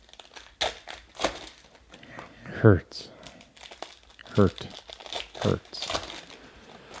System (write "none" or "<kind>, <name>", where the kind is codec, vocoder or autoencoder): none